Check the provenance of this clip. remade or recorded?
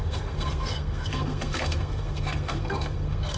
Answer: remade